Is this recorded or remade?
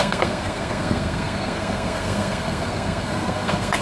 remade